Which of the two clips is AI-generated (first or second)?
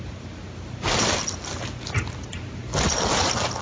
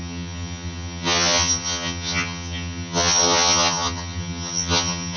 second